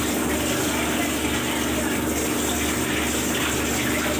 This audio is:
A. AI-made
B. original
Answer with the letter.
B